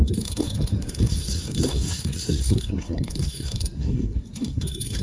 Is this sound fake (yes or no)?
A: yes